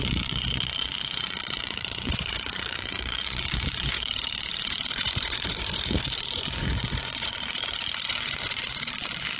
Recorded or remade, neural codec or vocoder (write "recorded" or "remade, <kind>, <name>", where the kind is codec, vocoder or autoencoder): remade, vocoder, Vocos